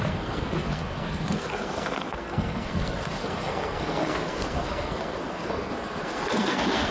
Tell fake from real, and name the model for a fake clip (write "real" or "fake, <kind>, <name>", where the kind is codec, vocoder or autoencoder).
fake, codec, SNAC